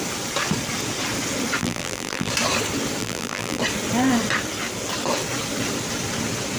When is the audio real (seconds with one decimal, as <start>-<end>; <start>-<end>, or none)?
0.0-1.6; 2.3-3.0; 3.6-6.6